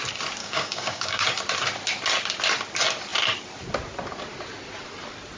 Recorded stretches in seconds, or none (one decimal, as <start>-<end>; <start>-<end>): 0.0-0.4; 1.2-5.4